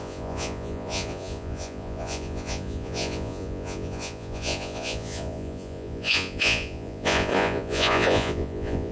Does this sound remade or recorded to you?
remade